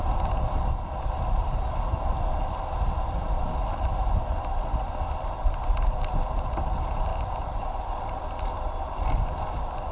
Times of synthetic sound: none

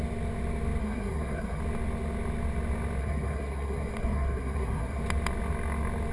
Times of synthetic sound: 0.8-1.6 (codec, SNAC); 3.0-5.0

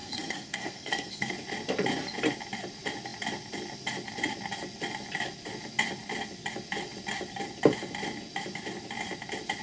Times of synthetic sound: 0.0-1.3 (codec, SNAC)

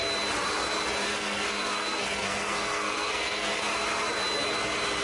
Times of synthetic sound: 1.1-3.5 (codec, SNAC)

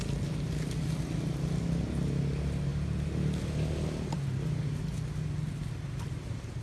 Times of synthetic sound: none

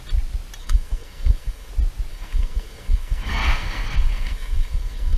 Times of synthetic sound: 0.6-1.7 (codec, SNAC); 2.1-5.2